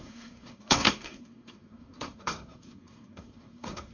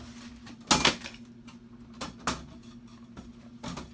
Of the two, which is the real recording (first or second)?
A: second